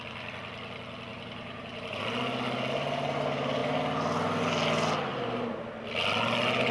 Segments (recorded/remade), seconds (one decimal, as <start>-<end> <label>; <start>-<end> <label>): 0.0-1.1 recorded; 1.1-2.0 remade; 2.0-5.1 recorded; 5.1-5.6 remade; 5.6-6.7 recorded